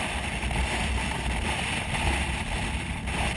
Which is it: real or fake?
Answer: real